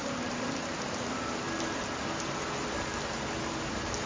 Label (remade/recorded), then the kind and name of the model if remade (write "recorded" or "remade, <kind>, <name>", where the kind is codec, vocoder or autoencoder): remade, vocoder, BigVGAN v2